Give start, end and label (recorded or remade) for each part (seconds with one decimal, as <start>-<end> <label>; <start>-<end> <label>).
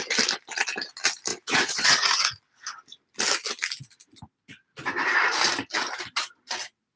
0.0-1.3 recorded; 1.3-2.4 remade; 2.4-7.0 recorded